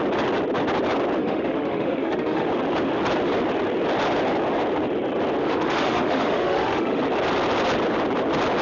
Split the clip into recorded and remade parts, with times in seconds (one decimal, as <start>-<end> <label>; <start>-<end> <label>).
0.0-1.2 recorded; 1.2-2.5 remade; 2.5-5.4 recorded; 5.4-7.0 remade; 7.0-8.6 recorded